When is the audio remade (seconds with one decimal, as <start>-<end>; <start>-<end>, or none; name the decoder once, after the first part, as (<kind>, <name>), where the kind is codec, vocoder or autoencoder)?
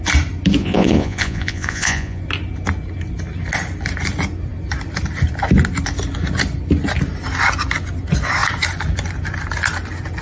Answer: 0.6-2.2 (vocoder, Vocos)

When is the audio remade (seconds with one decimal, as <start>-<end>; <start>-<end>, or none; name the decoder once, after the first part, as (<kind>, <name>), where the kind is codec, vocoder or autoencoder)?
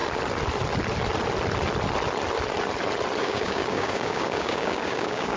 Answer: 3.2-5.4 (codec, DAC)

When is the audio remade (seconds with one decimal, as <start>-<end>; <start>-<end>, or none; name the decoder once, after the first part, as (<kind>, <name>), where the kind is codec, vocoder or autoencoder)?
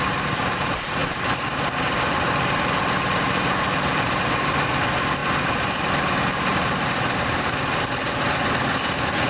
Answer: 6.5-7.6 (vocoder, BigVGAN v2)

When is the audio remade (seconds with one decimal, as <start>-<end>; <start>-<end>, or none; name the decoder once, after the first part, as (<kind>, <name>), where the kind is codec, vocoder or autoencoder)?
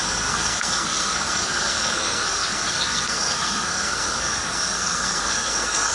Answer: 0.0-5.9 (codec, SNAC)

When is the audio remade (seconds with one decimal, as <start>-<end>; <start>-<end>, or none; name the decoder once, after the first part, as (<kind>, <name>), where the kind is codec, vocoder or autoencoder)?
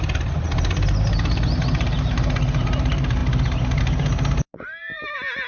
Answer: 1.1-3.2 (vocoder, BigVGAN v2); 3.8-5.5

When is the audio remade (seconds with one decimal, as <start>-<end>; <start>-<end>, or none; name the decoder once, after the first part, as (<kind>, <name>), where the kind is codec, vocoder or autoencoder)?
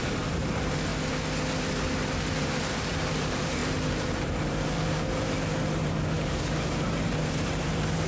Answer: 0.0-0.9 (vocoder, BigVGAN v2); 2.2-8.1